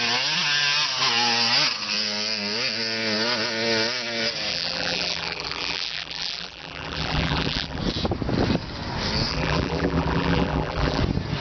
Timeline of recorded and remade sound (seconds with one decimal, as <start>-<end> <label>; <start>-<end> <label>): 0.0-4.5 recorded; 4.5-7.8 remade; 7.8-9.3 recorded; 9.3-11.0 remade; 11.0-11.4 recorded